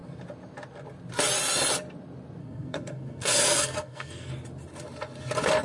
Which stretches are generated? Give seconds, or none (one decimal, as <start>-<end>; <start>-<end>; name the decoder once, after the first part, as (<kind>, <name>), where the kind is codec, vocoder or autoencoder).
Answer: 2.4-4.3 (codec, SNAC)